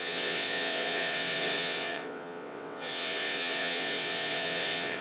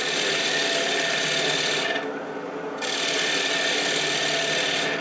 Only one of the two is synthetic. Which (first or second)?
first